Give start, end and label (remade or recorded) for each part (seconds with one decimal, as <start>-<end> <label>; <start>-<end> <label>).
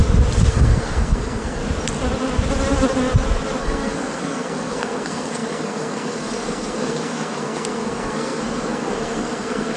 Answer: 0.0-0.5 recorded; 0.5-1.6 remade; 1.6-3.6 recorded; 3.6-9.8 remade